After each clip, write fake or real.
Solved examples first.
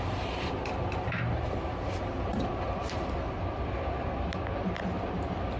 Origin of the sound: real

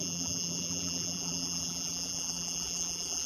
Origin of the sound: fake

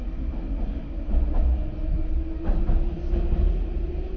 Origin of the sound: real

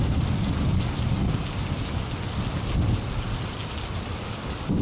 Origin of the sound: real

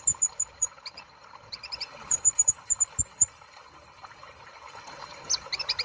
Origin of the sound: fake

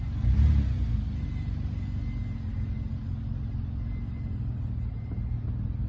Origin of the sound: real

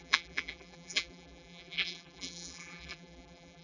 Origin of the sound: fake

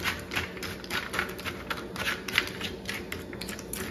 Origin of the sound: real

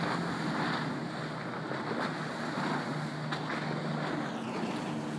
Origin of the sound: real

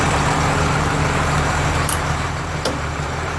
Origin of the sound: fake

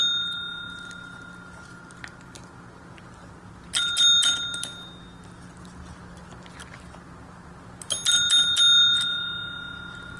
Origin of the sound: real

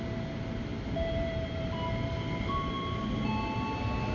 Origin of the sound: real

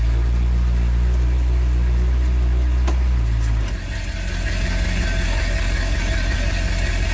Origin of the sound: real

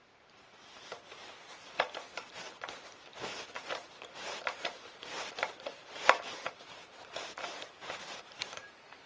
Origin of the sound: fake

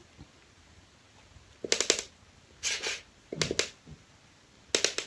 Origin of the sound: real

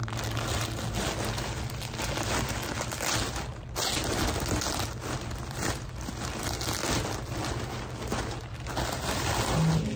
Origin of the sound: real